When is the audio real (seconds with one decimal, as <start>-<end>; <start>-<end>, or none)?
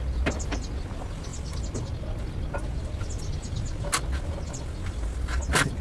0.0-5.8